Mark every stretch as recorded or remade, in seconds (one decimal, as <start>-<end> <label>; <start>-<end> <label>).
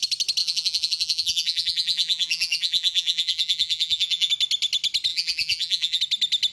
0.0-0.4 recorded; 0.4-4.3 remade; 4.3-5.1 recorded; 5.1-6.0 remade; 6.0-6.5 recorded